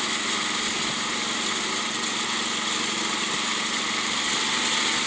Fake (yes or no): no